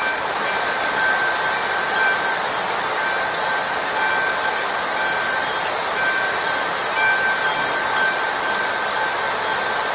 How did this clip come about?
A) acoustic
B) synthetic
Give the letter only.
A